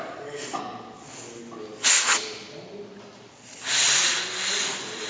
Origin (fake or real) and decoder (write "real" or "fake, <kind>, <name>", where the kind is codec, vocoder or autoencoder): real